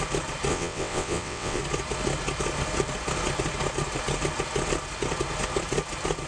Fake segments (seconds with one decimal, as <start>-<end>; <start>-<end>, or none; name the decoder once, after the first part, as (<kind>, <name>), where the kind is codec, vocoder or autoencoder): 0.5-1.6 (vocoder, WaveNeXt)